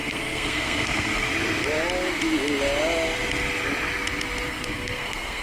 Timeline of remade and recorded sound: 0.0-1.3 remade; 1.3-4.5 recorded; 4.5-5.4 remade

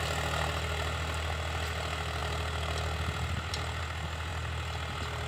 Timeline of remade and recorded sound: 0.0-5.3 recorded

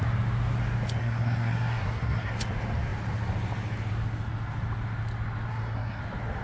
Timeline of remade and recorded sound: 0.0-1.0 recorded; 1.0-2.3 remade; 2.3-5.5 recorded; 5.5-6.0 remade; 6.0-6.4 recorded

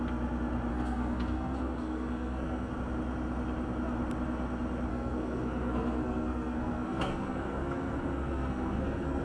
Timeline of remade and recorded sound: 0.0-0.7 recorded; 0.7-2.7 remade; 2.7-4.9 recorded; 4.9-9.2 remade

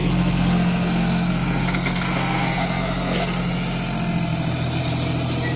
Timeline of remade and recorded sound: 0.0-3.4 remade; 3.4-5.6 recorded

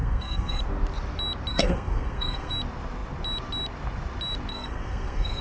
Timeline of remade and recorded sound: 0.0-0.6 remade; 0.6-1.5 recorded; 1.5-2.5 remade; 2.5-4.5 recorded; 4.5-5.4 remade